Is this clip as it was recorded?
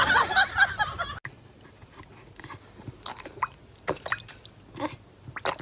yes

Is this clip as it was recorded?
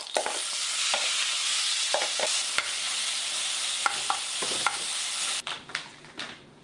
yes